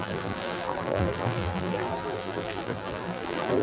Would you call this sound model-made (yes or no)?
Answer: yes